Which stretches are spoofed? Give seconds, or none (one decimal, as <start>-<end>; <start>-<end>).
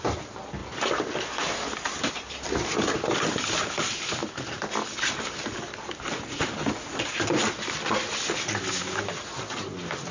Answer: 0.6-2.1